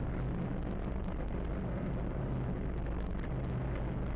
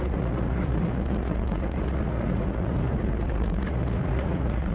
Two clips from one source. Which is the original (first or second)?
first